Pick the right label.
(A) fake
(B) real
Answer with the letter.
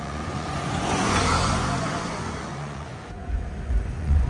A